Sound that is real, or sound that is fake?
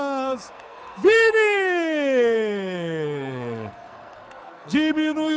fake